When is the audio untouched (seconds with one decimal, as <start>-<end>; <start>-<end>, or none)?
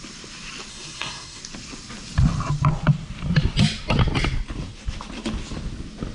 0.0-0.7; 1.4-6.1